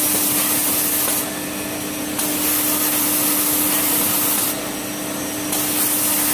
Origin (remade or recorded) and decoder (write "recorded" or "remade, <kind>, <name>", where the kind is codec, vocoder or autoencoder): recorded